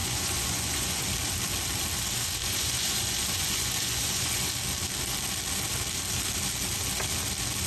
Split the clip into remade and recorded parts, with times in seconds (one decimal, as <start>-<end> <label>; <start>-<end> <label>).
0.0-1.0 remade; 1.0-2.4 recorded; 2.4-4.5 remade; 4.5-7.7 recorded